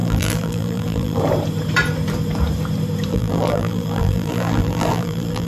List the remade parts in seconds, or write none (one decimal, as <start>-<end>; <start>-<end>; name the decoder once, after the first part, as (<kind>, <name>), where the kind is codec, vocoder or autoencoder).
0.0-1.2 (vocoder, BigVGAN v2); 3.1-5.5

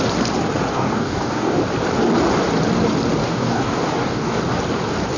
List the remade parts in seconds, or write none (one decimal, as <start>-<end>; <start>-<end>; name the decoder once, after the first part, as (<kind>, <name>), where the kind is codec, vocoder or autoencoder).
0.7-1.6 (codec, DAC); 3.2-4.4

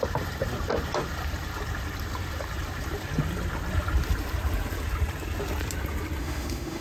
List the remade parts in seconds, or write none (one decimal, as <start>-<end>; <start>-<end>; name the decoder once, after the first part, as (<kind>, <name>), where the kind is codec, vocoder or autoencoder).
6.2-6.8 (autoencoder, DAC-VAE)